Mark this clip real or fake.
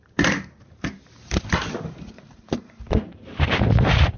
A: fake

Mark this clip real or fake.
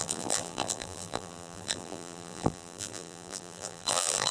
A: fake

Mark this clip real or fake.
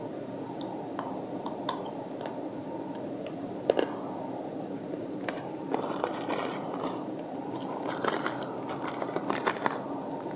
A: real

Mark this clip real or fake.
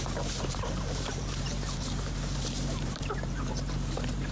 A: fake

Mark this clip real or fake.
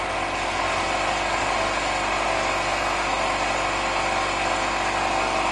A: real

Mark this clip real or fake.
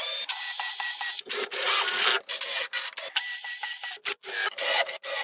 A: real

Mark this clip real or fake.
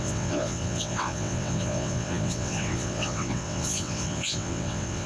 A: fake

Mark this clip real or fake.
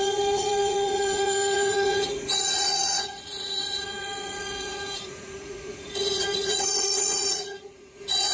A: fake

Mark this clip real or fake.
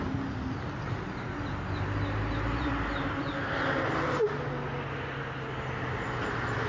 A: real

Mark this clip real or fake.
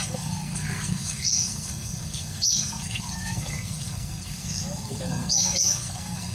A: fake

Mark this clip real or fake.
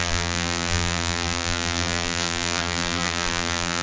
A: fake